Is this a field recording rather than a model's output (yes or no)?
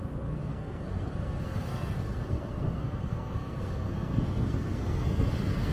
no